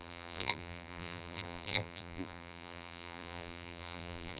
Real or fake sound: fake